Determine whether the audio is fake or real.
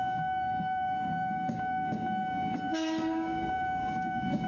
fake